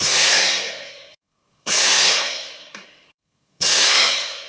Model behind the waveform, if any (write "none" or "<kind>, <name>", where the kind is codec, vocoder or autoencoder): codec, SNAC